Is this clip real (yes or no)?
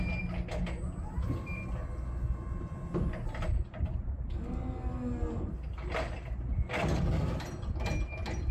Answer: yes